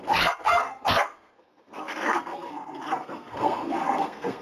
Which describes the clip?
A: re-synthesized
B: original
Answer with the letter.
A